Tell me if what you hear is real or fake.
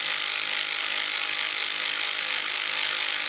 real